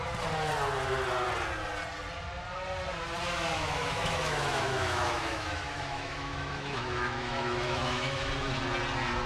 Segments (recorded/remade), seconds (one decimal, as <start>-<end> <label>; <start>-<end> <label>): 0.0-3.5 recorded; 3.5-8.3 remade; 8.3-9.3 recorded